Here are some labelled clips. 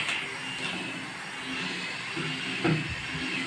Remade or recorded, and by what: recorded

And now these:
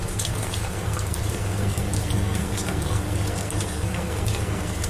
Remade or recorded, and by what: remade, codec, SNAC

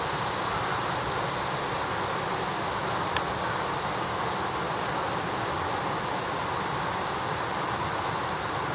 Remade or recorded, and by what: recorded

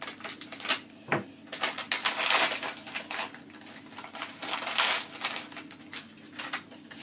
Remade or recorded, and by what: recorded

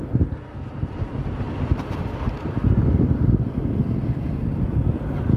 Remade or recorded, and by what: recorded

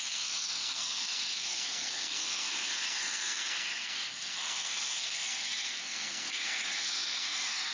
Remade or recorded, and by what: remade, codec, SNAC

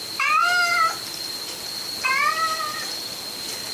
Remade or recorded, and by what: recorded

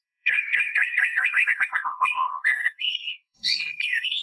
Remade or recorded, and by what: remade, codec, SNAC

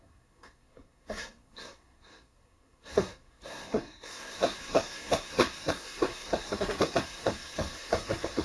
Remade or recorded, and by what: remade, codec, SNAC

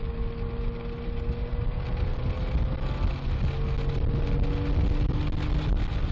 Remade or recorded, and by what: recorded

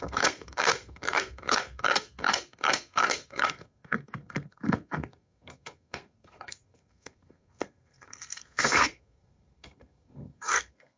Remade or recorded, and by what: remade, codec, SNAC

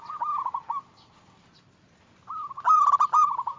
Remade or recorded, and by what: recorded